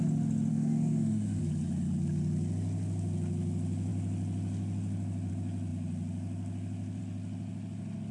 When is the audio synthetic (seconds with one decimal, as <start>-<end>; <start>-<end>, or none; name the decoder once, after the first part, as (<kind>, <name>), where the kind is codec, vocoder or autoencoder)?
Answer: 0.5-1.4 (autoencoder, DAC-VAE)